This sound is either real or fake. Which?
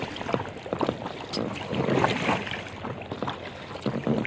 real